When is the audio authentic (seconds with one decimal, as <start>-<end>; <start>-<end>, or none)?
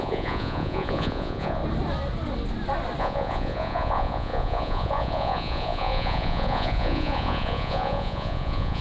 1.6-3.0